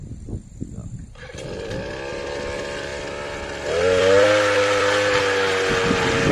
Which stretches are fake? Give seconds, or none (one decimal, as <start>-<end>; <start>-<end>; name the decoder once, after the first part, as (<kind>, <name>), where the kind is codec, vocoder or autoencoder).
0.8-2.1 (vocoder, BigVGAN v2); 2.9-5.2

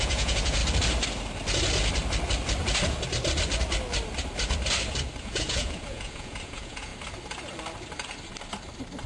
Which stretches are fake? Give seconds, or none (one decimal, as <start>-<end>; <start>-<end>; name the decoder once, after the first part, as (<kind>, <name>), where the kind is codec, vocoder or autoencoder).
0.0-0.6 (vocoder, Vocos); 5.2-6.9